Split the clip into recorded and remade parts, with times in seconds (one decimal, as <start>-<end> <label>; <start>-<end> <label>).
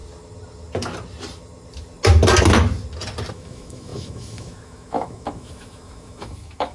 0.0-3.3 recorded; 3.3-6.7 remade